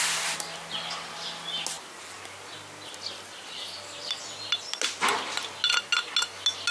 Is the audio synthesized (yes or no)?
no